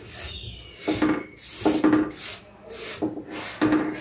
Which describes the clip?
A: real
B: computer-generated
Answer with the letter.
A